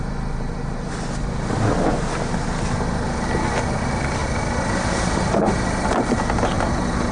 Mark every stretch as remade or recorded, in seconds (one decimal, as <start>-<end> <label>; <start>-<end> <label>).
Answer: 0.0-7.1 recorded